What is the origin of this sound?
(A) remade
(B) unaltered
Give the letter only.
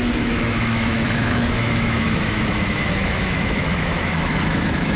A